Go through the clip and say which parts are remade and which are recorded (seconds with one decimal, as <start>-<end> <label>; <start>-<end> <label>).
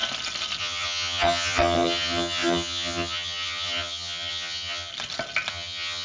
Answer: 0.0-0.6 recorded; 0.6-4.9 remade; 4.9-5.5 recorded; 5.5-6.0 remade